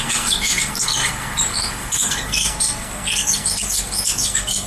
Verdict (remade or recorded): remade